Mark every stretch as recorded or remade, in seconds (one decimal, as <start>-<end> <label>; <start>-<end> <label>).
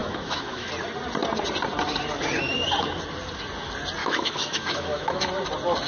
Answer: 0.0-0.7 remade; 0.7-4.0 recorded; 4.0-5.3 remade; 5.3-5.9 recorded